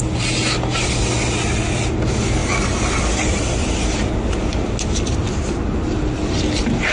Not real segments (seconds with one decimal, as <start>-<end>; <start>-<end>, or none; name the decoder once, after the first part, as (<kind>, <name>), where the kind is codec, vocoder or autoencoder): none